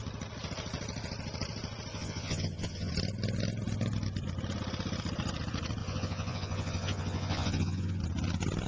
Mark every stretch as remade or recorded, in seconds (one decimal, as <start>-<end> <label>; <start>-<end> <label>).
0.0-1.9 recorded; 1.9-2.9 remade; 2.9-5.8 recorded; 5.8-8.0 remade; 8.0-8.7 recorded